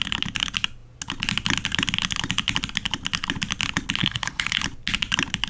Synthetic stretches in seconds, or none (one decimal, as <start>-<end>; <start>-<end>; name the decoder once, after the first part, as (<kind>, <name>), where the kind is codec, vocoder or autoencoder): 4.0-4.6 (codec, HILCodec)